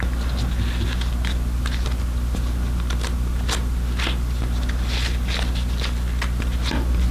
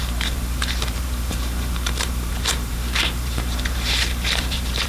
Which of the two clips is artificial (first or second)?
second